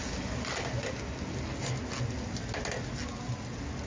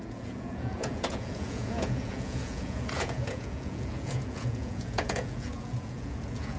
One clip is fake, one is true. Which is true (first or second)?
first